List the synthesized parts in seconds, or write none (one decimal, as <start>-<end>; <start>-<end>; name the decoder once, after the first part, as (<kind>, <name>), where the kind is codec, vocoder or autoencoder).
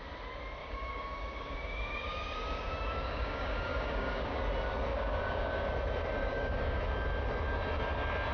0.6-4.4 (codec, DAC); 4.9-5.7; 6.2-6.8